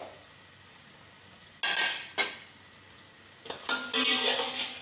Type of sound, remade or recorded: recorded